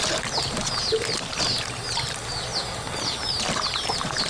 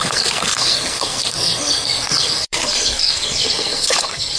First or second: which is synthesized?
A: second